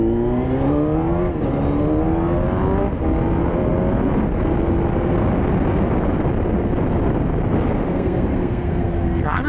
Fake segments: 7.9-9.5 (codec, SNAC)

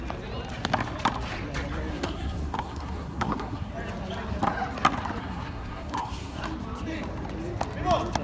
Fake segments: 1.9-3.7 (codec, SNAC); 5.2-6.4

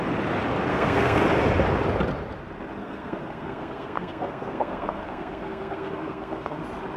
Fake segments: 0.7-1.2 (codec, SNAC); 2.8-6.6

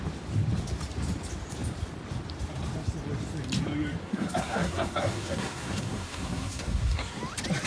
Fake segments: 4.0-7.2 (codec, SNAC)

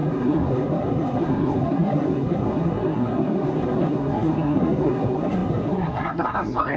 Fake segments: 0.0-6.8 (codec, SNAC)

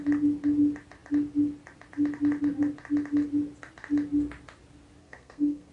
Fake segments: 5.0-5.7 (codec, SNAC)

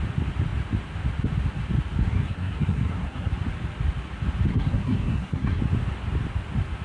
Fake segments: 2.0-3.3 (codec, SNAC); 4.5-5.6